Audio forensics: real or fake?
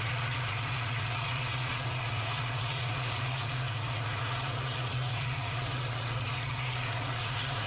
fake